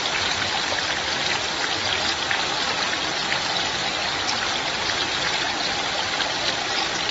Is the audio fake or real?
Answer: real